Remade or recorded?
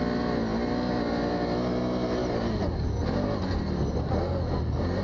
recorded